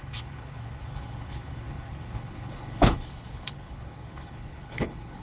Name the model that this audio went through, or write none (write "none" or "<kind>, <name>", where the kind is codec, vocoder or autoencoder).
codec, HILCodec